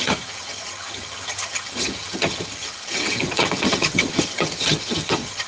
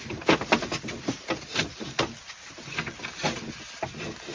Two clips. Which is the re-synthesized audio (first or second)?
first